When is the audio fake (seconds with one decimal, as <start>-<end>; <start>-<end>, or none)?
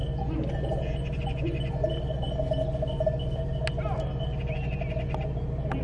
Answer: none